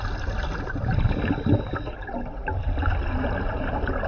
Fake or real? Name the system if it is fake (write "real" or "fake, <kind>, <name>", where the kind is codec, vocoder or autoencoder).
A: real